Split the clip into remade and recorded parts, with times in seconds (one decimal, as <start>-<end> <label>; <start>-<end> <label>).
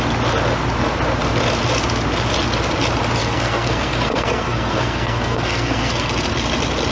0.0-3.2 recorded; 3.2-6.1 remade; 6.1-6.9 recorded